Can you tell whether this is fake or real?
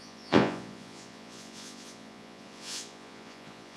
fake